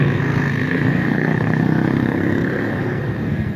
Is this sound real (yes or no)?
no